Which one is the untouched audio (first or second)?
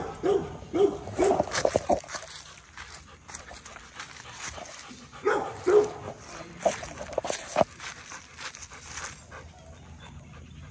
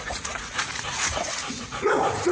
first